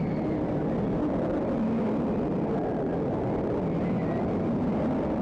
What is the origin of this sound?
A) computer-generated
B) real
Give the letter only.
B